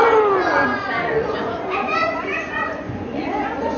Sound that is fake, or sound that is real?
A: fake